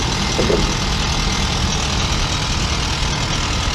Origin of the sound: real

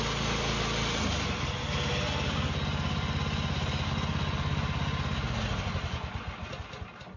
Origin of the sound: real